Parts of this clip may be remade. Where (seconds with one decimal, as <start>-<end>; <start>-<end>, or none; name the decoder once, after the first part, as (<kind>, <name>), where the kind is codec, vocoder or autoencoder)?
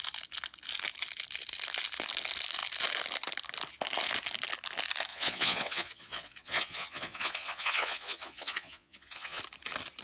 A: 5.1-9.4 (vocoder, Vocos)